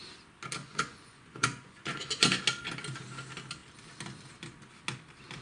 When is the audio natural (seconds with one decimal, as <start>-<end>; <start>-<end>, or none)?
0.0-0.6; 2.4-5.4